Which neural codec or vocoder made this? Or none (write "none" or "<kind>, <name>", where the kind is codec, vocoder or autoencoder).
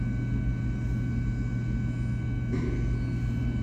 none